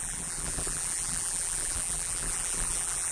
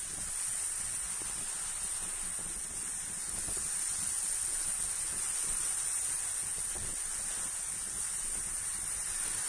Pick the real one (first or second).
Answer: second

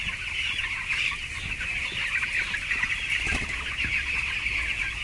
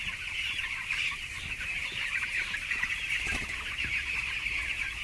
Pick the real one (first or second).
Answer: first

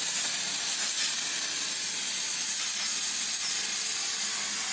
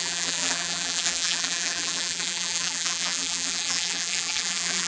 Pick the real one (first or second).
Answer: first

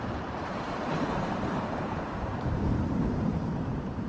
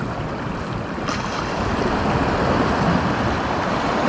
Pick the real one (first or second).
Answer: second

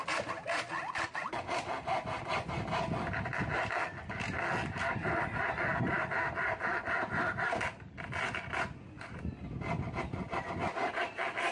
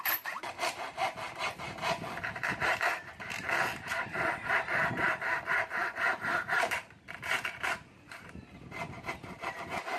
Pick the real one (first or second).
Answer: first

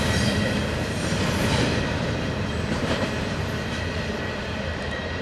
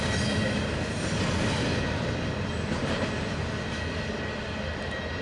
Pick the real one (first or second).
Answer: second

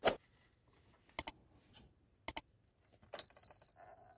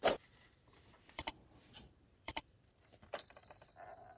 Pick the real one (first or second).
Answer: first